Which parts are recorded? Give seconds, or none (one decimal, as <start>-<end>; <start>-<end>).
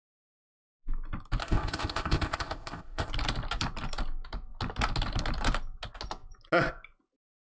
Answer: 0.0-1.4; 3.1-7.5